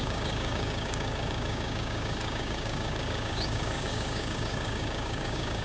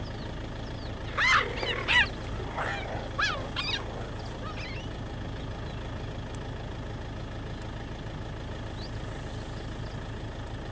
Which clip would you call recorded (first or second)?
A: second